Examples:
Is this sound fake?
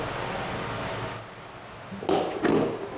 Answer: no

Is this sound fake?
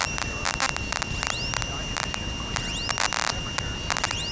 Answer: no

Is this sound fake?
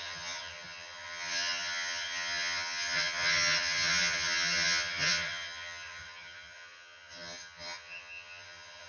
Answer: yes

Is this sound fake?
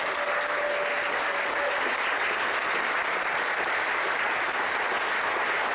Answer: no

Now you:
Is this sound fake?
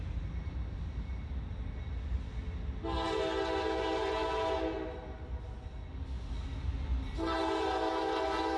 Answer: no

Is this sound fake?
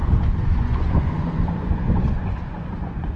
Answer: yes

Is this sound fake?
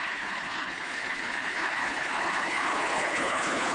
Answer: yes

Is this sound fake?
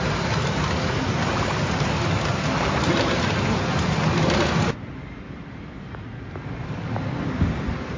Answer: no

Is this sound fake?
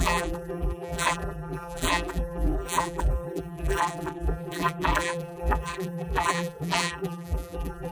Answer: yes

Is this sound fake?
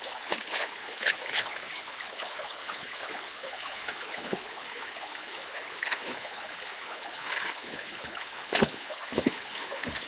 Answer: yes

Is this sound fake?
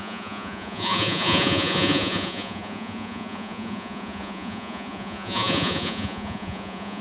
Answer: yes